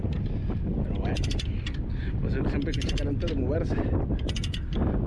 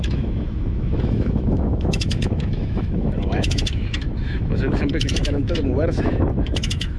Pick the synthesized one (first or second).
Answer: second